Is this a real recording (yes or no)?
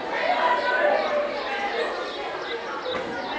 yes